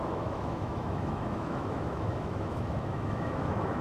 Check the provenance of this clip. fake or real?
fake